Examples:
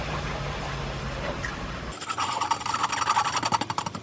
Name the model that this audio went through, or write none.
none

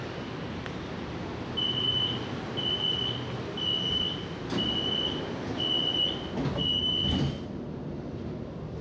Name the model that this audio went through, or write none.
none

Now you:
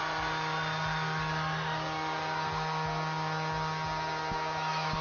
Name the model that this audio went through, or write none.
none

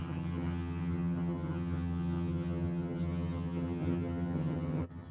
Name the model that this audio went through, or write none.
vocoder, HiFi-GAN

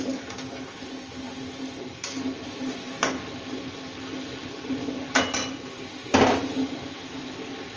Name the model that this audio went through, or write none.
none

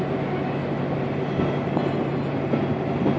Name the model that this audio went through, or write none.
none